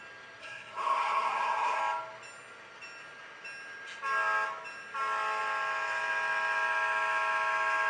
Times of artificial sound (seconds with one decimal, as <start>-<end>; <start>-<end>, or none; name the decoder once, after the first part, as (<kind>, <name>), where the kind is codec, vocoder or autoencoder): 0.4-1.8 (codec, SNAC)